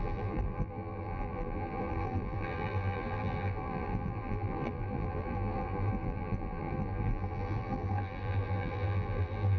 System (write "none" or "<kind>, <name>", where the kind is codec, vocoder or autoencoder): vocoder, BigVGAN v2